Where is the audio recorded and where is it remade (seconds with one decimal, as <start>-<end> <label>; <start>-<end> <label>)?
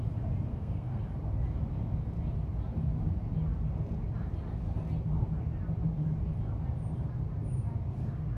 0.0-0.5 recorded; 0.5-1.0 remade; 1.0-8.4 recorded